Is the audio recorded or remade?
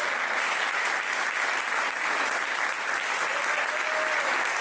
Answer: recorded